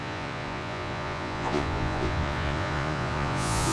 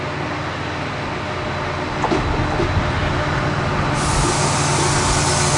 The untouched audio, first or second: second